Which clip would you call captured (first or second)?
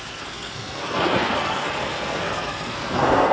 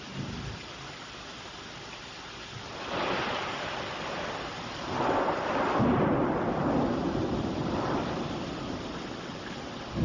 second